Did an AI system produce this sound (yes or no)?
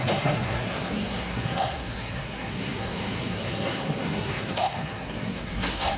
yes